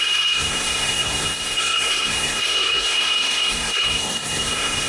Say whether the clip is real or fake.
fake